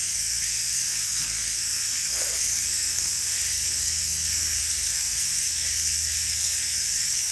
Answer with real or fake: fake